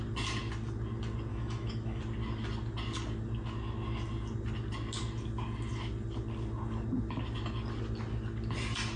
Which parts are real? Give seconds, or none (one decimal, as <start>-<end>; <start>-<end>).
0.0-1.3; 2.0-9.0